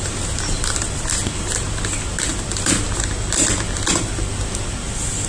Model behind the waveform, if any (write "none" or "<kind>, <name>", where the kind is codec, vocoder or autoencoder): none